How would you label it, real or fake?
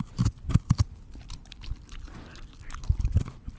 real